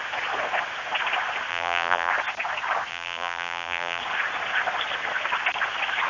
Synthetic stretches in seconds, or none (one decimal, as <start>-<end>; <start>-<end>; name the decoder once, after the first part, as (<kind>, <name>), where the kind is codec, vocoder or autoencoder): 1.5-2.1 (vocoder, BigVGAN v2); 2.9-4.0